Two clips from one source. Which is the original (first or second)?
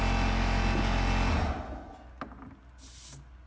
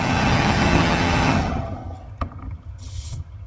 first